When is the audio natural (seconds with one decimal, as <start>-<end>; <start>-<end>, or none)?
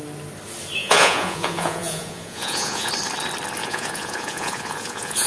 0.0-0.8; 2.9-3.6